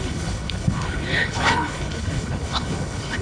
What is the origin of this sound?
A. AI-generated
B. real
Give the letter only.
A